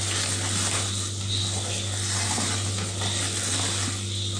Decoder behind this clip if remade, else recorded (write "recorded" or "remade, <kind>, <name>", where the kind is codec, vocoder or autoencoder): recorded